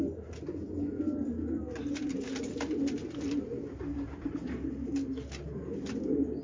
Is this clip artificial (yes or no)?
no